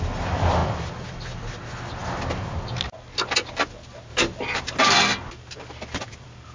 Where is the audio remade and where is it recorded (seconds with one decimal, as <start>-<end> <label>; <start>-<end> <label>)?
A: 0.0-6.5 recorded